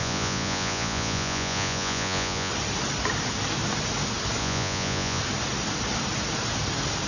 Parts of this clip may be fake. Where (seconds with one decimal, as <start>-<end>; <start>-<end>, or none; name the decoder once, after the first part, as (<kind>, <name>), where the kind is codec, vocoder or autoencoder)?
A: 0.0-2.5 (vocoder, Vocos); 4.4-5.2